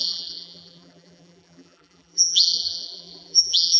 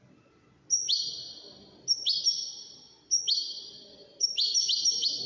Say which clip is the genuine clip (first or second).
second